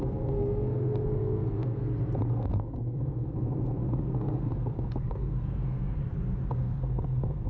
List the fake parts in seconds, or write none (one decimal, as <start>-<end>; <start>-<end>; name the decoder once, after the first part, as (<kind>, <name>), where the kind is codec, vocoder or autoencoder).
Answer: 0.0-1.8 (codec, SNAC); 2.3-6.0; 6.5-7.5